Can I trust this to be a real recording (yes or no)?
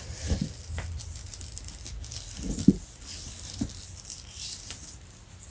yes